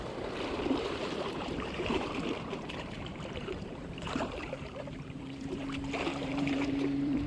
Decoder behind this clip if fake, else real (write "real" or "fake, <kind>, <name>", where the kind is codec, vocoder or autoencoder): fake, vocoder, BigVGAN v2